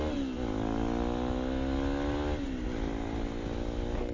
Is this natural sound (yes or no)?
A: yes